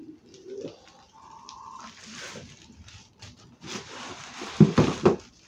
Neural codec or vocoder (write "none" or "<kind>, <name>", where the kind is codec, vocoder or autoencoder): none